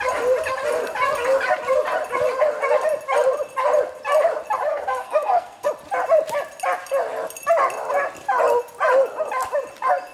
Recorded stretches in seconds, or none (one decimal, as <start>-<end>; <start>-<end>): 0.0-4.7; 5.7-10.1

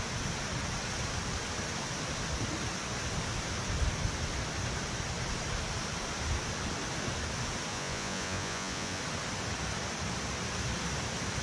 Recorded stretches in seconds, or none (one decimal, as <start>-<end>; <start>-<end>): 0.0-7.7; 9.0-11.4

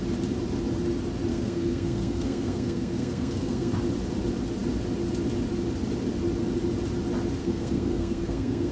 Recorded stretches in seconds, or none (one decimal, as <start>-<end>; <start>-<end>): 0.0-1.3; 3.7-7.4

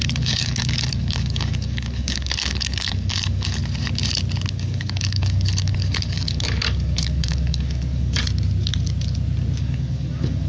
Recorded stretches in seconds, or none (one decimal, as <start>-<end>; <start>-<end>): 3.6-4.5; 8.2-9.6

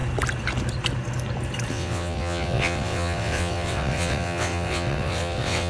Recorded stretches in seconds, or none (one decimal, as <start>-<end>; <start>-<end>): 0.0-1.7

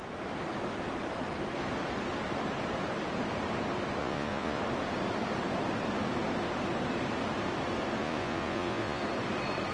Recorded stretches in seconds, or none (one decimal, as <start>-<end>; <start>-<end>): 0.0-4.0; 4.6-8.0; 9.0-9.7

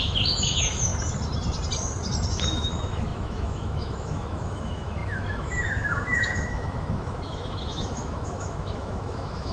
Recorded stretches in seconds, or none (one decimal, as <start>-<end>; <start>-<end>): 0.9-2.3

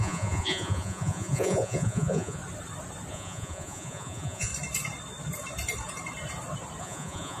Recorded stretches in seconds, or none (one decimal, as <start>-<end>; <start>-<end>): 2.4-3.1; 4.5-6.8